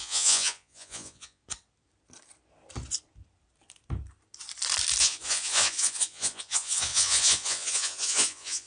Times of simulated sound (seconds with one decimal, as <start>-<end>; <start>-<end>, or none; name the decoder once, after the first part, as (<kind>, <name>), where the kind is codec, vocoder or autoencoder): 0.0-1.4 (vocoder, Vocos); 5.0-8.7